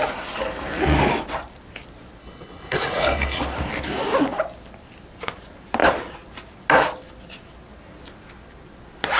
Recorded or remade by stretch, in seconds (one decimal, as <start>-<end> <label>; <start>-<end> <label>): 0.0-2.2 recorded; 2.2-3.4 remade; 3.4-9.2 recorded